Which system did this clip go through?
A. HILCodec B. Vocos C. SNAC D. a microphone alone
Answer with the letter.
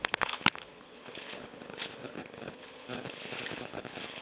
A